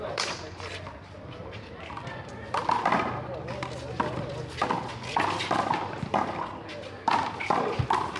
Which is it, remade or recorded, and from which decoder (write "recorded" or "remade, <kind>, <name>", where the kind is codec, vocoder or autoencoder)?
remade, vocoder, BigVGAN v2